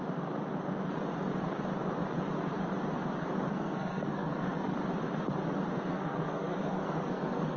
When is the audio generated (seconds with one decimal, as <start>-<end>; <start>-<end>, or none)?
3.5-4.7; 5.9-7.6